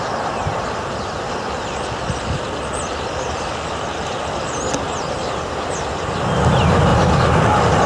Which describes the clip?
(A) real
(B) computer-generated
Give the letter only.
A